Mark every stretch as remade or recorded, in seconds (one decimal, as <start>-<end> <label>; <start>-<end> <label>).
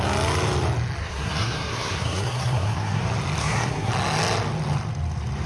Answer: 0.0-1.0 recorded; 1.0-3.0 remade; 3.0-3.4 recorded; 3.4-3.9 remade; 3.9-5.5 recorded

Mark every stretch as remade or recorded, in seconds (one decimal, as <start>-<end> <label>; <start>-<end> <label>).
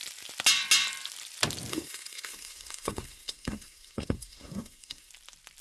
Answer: 0.0-1.7 recorded; 1.7-5.1 remade; 5.1-5.6 recorded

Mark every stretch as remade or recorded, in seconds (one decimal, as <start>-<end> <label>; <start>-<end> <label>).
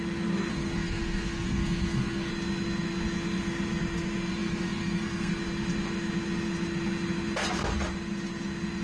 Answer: 0.0-0.5 recorded; 0.5-2.3 remade; 2.3-4.3 recorded; 4.3-5.3 remade; 5.3-8.8 recorded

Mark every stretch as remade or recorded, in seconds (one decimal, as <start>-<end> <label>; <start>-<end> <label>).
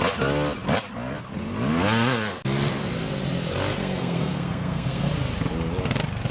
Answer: 0.0-3.8 recorded; 3.8-5.1 remade; 5.1-6.3 recorded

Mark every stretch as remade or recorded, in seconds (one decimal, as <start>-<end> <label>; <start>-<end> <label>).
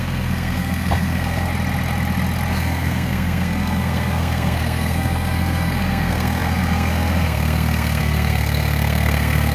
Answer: 0.0-1.5 remade; 1.5-2.5 recorded; 2.5-9.5 remade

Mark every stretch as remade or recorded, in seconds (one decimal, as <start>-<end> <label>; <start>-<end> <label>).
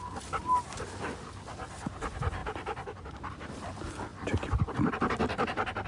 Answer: 0.0-5.9 recorded